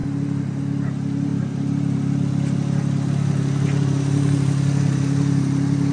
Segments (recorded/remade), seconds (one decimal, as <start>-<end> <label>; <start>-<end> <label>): 0.0-5.9 recorded

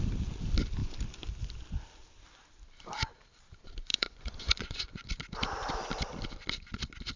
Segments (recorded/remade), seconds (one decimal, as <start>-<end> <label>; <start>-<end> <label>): 0.0-3.9 recorded; 3.9-5.1 remade; 5.1-7.2 recorded